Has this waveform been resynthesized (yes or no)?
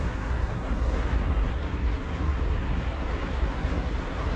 yes